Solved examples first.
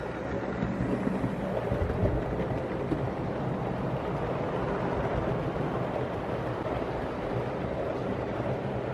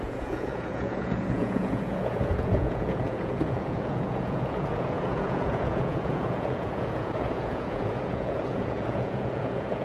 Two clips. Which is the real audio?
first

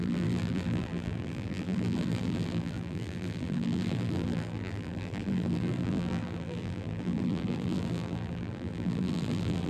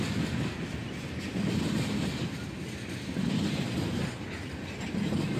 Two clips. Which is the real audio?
second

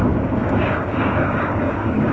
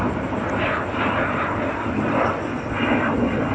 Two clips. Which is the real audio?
second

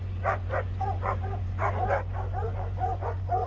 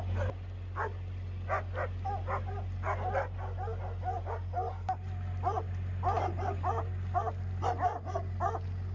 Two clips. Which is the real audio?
second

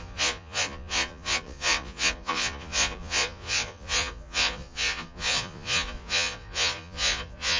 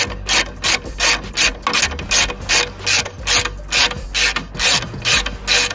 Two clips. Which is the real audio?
second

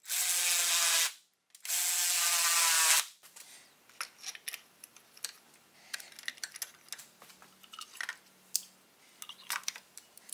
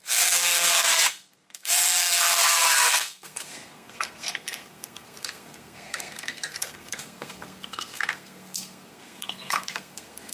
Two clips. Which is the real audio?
first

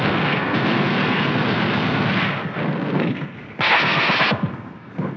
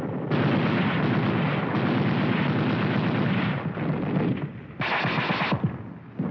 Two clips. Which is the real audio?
second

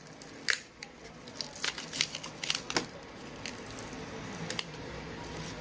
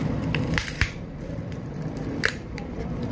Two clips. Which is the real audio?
first